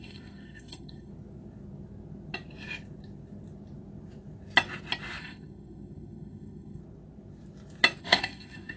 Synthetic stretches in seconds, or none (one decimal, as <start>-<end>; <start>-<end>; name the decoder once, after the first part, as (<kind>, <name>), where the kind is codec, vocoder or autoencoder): 0.0-1.1 (codec, SNAC); 5.2-6.8; 8.0-8.8